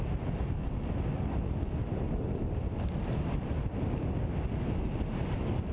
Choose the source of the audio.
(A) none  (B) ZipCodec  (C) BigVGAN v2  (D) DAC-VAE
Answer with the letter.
A